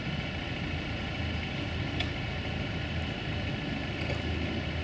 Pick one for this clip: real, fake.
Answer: real